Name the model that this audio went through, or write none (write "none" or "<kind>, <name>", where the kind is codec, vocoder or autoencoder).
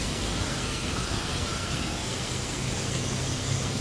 codec, SNAC